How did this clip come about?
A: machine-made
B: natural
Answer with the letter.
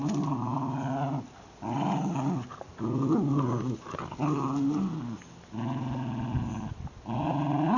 B